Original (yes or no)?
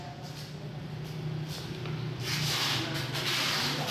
yes